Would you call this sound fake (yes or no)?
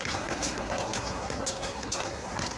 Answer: yes